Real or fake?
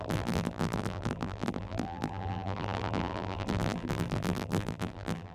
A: fake